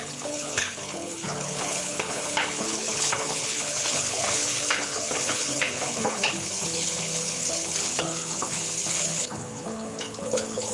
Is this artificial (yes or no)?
yes